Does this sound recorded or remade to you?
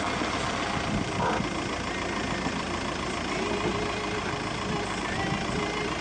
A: recorded